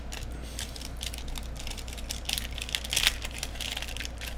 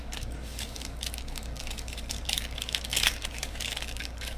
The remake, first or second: second